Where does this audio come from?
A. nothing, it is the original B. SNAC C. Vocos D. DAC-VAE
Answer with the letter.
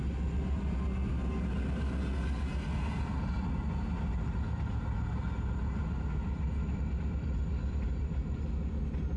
A